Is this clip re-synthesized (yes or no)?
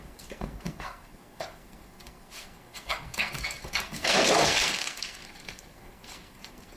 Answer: yes